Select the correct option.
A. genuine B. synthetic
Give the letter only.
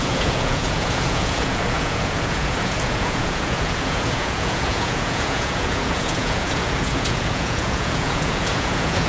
B